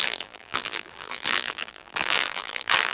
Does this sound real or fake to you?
fake